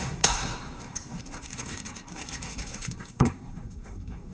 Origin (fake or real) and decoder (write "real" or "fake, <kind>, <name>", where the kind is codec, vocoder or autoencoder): fake, codec, SNAC